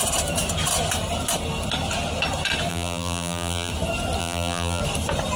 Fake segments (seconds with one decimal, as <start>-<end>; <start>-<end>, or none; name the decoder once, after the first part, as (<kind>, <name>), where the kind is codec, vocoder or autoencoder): 2.7-3.7 (vocoder, BigVGAN v2); 4.2-4.8